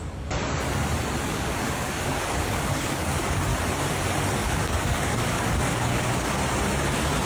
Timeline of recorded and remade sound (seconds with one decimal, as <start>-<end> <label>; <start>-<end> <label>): 0.0-0.4 remade; 0.4-1.3 recorded; 1.3-3.5 remade; 3.5-4.5 recorded; 4.5-6.4 remade; 6.4-7.3 recorded